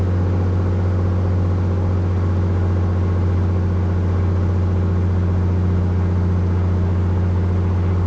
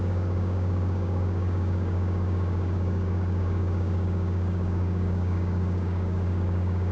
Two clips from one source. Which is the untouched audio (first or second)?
first